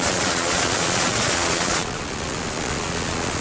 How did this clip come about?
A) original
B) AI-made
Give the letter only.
B